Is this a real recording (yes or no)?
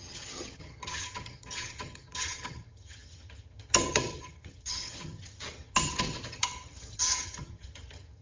no